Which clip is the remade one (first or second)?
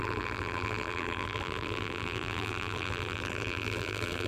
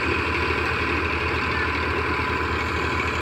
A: first